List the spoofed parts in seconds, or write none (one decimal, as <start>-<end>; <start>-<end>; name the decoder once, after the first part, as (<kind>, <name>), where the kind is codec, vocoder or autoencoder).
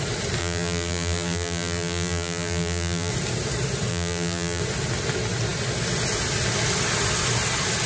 0.4-3.1 (vocoder, BigVGAN v2); 3.9-4.6